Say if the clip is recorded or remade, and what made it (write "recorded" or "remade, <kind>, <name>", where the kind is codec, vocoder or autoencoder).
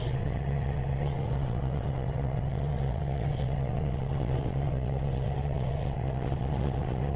remade, vocoder, WaveNeXt